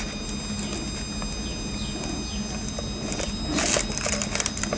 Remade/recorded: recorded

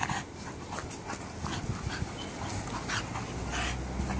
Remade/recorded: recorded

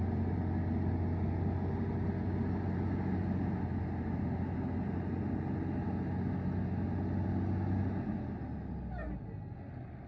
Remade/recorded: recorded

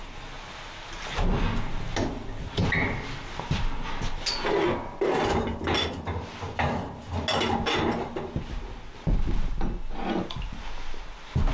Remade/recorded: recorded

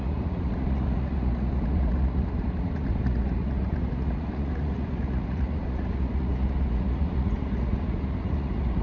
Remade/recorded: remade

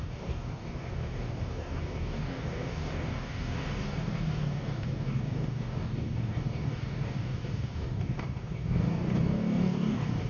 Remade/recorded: remade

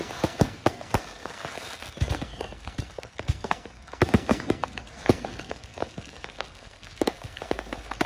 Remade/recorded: remade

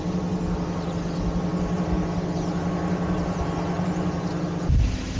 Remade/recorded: recorded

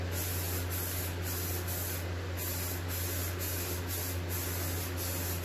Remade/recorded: recorded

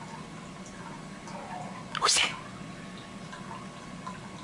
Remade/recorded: recorded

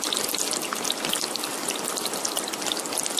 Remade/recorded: recorded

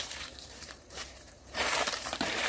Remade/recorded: remade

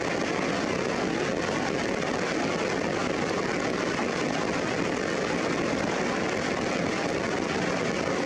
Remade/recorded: recorded